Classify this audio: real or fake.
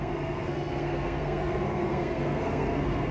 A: fake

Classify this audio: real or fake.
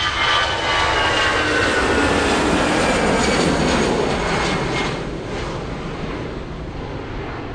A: real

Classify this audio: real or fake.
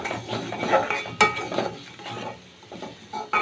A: real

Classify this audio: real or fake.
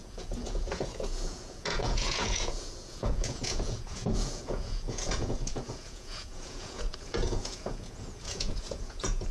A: fake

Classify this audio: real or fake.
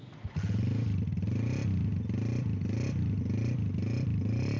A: real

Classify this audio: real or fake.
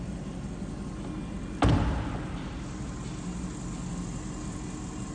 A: real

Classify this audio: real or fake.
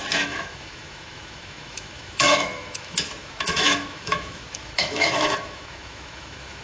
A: fake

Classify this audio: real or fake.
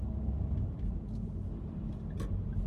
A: real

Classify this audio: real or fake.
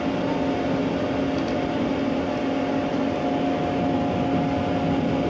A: real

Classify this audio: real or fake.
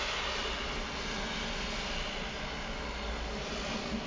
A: real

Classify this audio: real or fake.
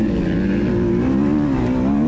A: real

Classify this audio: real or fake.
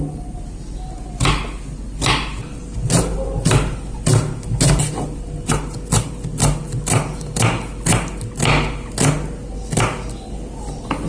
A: real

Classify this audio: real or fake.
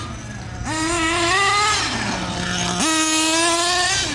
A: real